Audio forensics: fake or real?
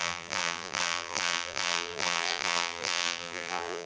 fake